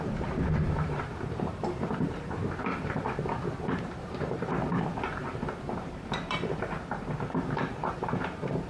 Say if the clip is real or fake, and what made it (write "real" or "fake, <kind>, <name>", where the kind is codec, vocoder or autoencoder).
fake, vocoder, BigVGAN v2